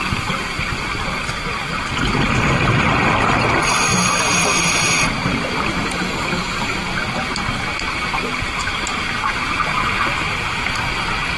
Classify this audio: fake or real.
real